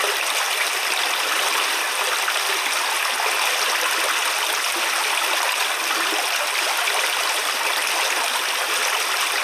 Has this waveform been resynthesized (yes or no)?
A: no